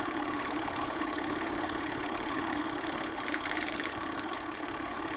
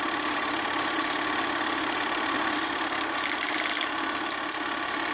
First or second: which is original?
second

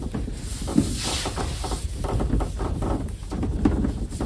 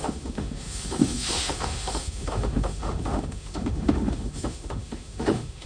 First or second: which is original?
first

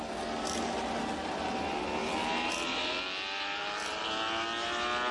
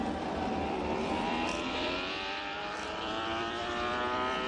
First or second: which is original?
first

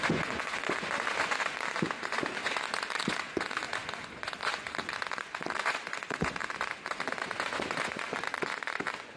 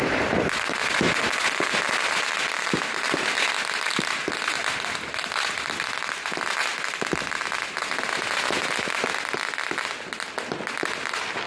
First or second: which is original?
second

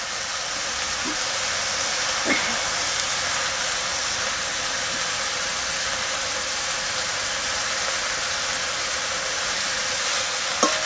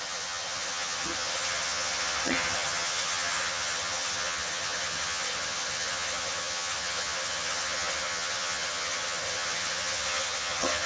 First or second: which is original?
first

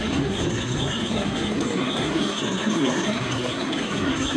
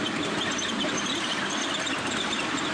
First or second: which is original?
second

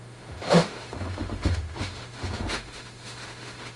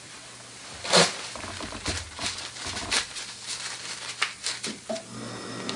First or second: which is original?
second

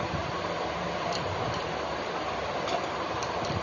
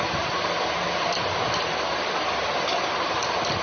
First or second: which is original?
second